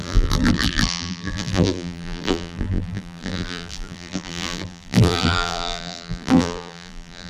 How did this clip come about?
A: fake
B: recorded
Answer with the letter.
A